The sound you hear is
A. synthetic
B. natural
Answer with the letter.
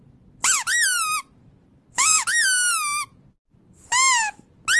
B